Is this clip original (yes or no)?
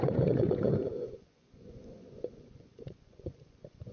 no